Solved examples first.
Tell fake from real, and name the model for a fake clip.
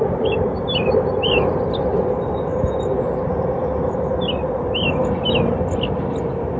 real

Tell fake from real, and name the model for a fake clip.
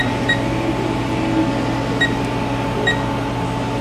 real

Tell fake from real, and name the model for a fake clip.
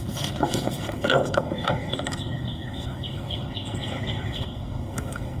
fake, codec, SNAC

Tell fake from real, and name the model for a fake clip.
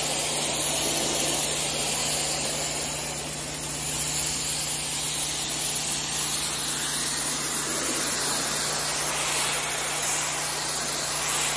real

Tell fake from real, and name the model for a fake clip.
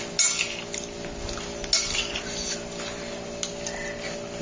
real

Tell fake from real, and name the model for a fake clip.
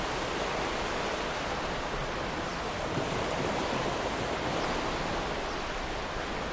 real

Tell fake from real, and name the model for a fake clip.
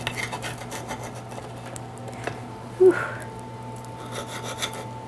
real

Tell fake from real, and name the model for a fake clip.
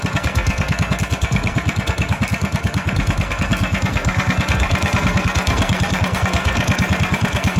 fake, codec, SNAC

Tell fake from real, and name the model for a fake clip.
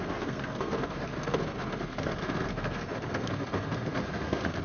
fake, codec, SNAC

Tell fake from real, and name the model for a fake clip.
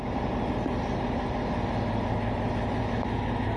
real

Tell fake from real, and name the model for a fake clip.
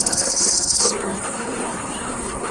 fake, codec, SNAC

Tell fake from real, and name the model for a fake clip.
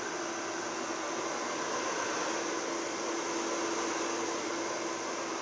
real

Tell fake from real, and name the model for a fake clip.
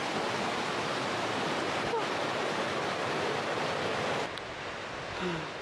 real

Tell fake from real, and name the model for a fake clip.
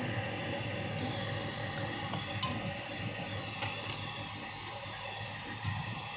real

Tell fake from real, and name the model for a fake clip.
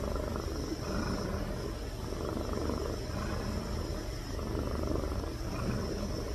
real